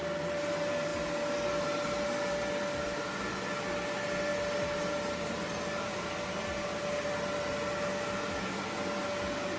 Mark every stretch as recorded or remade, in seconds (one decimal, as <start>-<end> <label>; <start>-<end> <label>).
0.0-9.6 recorded

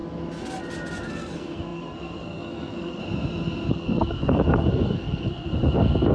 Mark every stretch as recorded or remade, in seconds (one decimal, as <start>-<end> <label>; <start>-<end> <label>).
0.0-1.0 recorded; 1.0-3.0 remade; 3.0-3.7 recorded; 3.7-6.1 remade

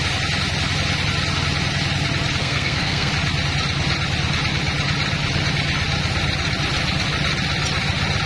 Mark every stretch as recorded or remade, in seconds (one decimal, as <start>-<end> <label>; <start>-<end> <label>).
0.0-2.4 recorded; 2.4-3.1 remade; 3.1-8.3 recorded